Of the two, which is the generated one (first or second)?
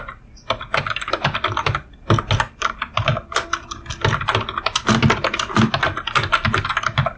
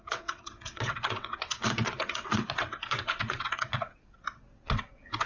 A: second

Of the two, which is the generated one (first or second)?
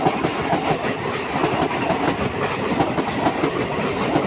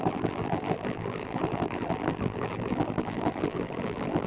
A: second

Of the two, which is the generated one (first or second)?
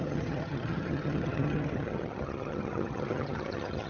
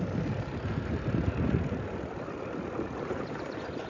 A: first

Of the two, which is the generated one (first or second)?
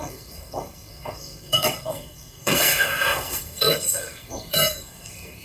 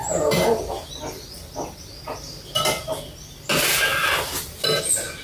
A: first